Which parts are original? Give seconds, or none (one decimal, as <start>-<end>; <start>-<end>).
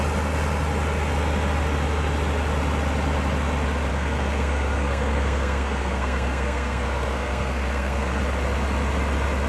0.0-3.9; 8.2-9.5